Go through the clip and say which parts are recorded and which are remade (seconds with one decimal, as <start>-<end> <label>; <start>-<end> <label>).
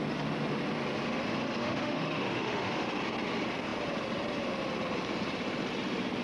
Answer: 0.0-1.6 recorded; 1.6-2.9 remade; 2.9-6.2 recorded